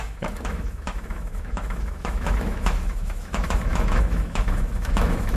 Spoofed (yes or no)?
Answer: yes